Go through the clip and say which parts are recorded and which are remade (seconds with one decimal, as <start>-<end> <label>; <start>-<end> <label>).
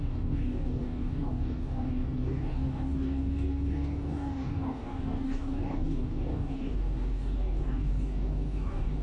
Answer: 0.0-9.0 remade